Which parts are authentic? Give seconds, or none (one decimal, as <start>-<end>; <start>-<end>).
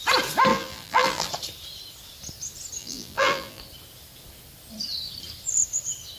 0.0-0.5; 1.3-2.8; 3.6-6.2